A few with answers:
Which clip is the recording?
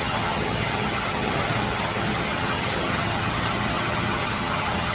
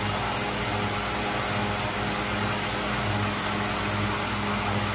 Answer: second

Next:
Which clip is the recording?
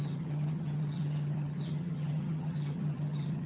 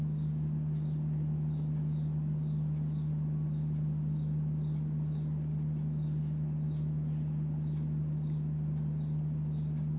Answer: second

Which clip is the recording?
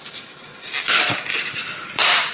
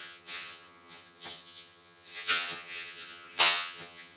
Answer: first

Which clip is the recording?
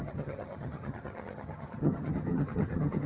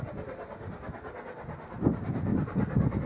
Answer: second